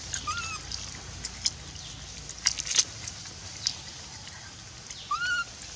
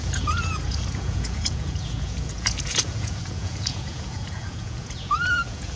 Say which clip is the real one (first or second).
first